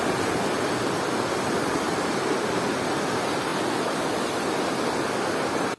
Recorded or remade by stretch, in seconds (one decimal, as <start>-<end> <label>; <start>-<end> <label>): 0.0-5.8 recorded